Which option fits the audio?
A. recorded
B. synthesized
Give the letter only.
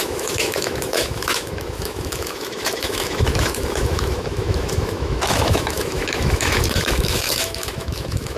B